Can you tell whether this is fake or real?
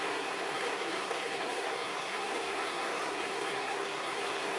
fake